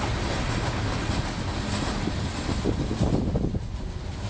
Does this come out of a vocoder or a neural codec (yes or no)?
no